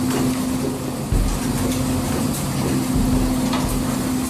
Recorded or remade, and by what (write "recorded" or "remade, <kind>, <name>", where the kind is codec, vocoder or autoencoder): recorded